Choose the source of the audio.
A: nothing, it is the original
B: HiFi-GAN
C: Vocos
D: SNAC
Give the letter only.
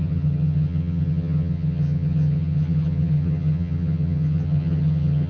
B